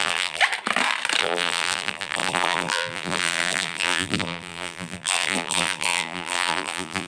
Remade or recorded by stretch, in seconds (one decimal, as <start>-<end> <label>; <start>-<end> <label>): 0.0-0.4 remade; 0.4-1.2 recorded; 1.2-7.1 remade